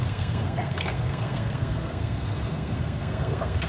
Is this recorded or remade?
remade